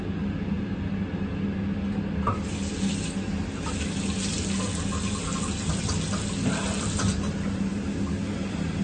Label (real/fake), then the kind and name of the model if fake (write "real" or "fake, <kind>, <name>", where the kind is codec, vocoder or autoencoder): real